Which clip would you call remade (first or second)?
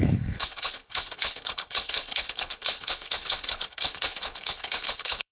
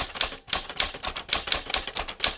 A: first